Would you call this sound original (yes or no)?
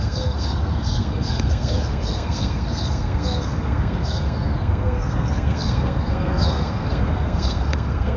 no